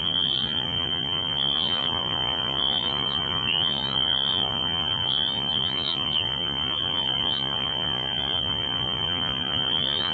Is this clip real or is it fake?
fake